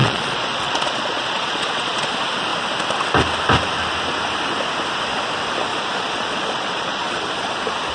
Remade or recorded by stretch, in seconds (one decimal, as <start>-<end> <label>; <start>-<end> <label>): 0.0-2.1 remade; 2.1-5.7 recorded; 5.7-7.2 remade; 7.2-7.9 recorded

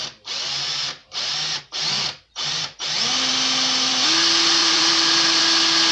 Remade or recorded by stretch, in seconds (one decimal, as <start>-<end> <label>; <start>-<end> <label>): 0.0-1.0 recorded; 1.0-1.6 remade; 1.6-4.6 recorded; 4.6-5.4 remade; 5.4-5.9 recorded

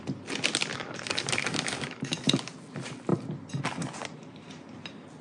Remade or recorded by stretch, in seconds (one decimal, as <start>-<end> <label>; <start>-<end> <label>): 0.0-0.7 recorded; 0.7-2.3 remade; 2.3-5.2 recorded

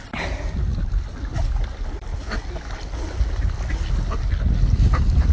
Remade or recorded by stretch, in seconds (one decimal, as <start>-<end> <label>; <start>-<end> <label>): 0.0-5.3 recorded